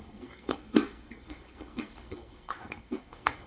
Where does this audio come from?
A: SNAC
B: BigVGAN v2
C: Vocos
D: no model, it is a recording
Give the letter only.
A